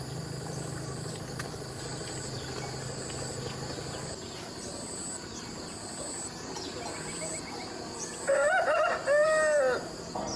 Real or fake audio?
real